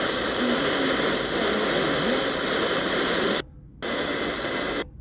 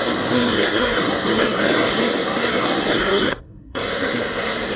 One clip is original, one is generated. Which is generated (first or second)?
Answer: second